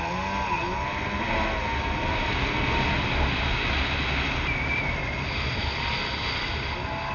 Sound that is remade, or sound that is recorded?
recorded